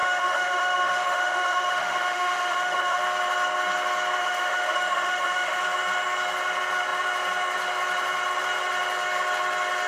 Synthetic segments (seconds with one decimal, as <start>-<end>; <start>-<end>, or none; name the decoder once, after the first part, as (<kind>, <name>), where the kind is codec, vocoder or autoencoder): 0.0-3.0 (autoencoder, DAC-VAE); 4.2-5.6